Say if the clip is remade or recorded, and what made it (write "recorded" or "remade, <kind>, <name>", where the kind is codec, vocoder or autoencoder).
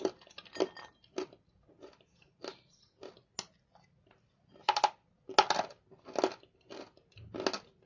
recorded